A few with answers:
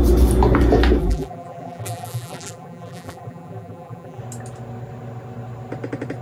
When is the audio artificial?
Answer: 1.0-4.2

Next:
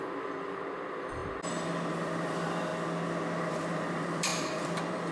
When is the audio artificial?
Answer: 0.0-1.2; 2.2-2.7; 3.5-5.1

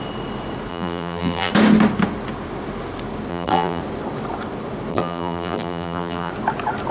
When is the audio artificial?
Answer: 0.7-1.5; 3.3-3.8; 4.9-6.3

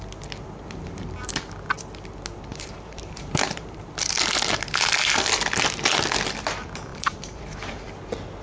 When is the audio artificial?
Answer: 2.5-3.8; 6.9-7.4

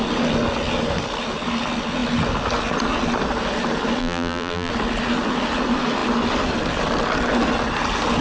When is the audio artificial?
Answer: 4.0-4.7

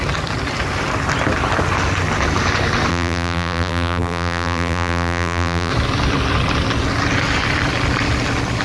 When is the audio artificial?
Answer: 2.9-5.7

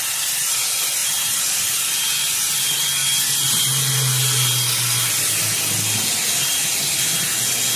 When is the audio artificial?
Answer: 1.0-1.8